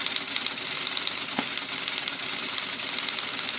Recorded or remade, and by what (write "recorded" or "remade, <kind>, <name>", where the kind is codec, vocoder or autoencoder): recorded